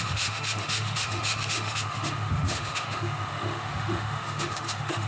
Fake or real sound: fake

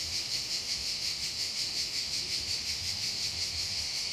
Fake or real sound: fake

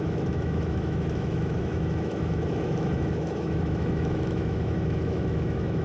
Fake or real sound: fake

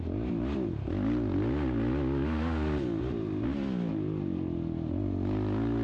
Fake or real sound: real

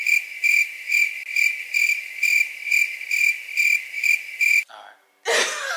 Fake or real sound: real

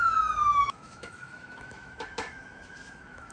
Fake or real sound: fake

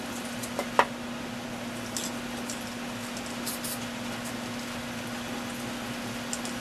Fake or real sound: real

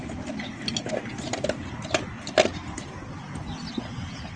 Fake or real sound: real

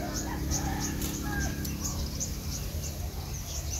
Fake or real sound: real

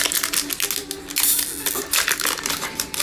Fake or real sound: real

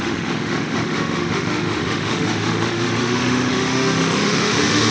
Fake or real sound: fake